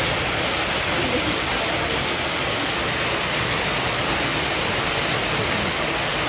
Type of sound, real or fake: real